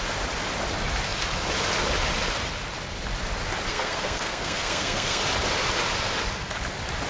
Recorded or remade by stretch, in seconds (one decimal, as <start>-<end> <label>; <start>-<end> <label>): 0.0-3.7 recorded; 3.7-5.2 remade; 5.2-7.1 recorded